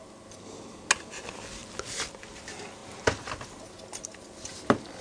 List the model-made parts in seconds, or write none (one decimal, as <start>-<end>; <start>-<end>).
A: none